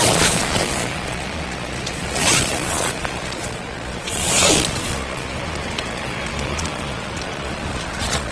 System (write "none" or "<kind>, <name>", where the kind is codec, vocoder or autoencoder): vocoder, Vocos